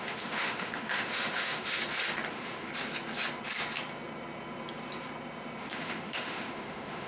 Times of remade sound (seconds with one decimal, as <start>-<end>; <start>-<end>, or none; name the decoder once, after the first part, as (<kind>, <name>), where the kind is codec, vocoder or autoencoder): 0.0-1.8 (autoencoder, DAC-VAE); 2.3-2.7; 5.6-7.1